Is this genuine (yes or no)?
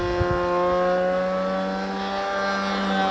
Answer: yes